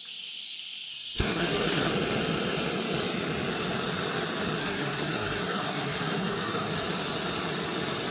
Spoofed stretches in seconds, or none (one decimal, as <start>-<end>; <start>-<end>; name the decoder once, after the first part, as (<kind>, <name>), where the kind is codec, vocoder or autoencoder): 0.9-1.9 (codec, SNAC); 4.6-6.7